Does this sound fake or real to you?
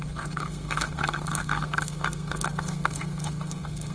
fake